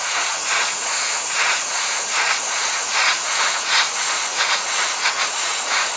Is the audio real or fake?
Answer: fake